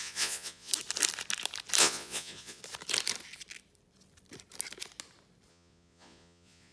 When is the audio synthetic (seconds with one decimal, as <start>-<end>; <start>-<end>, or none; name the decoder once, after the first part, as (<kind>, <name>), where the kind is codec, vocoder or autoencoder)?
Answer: 0.0-0.7 (vocoder, Vocos); 1.8-2.6; 5.5-6.7